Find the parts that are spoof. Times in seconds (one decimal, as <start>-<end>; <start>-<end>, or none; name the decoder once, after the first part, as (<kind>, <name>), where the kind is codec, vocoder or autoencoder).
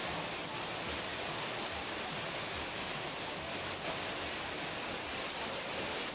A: none